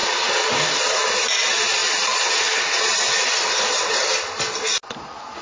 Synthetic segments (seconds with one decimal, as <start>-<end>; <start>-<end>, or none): none